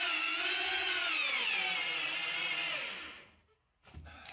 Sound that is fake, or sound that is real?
real